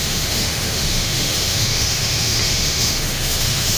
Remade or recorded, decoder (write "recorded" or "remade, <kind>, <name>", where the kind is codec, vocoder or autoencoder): remade, autoencoder, DAC-VAE